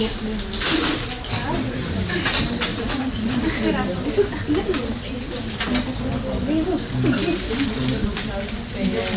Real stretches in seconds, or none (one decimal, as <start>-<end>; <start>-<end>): 0.0-2.7; 3.3-9.2